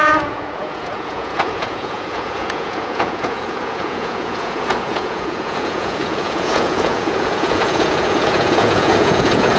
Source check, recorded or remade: remade